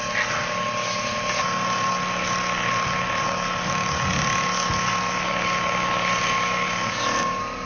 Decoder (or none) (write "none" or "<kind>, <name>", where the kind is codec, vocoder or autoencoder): none